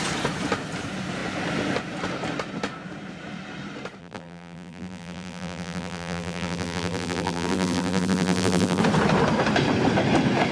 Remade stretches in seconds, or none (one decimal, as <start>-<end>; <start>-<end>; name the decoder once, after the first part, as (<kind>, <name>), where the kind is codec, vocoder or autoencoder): 4.0-8.8 (vocoder, BigVGAN v2)